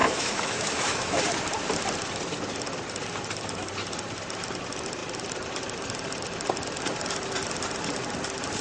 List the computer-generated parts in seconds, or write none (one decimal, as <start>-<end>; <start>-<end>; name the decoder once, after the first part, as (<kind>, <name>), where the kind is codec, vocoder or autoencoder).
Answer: 0.0-1.2 (autoencoder, DAC-VAE)